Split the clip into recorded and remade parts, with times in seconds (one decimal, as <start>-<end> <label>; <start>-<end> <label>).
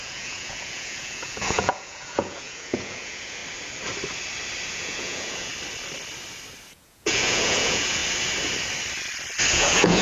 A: 0.0-3.4 remade; 3.4-4.7 recorded; 4.7-5.5 remade; 5.5-6.7 recorded; 6.7-8.0 remade; 8.0-9.5 recorded; 9.5-10.0 remade